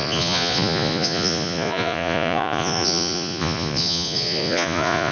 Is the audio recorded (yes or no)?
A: no